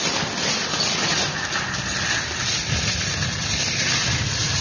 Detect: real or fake real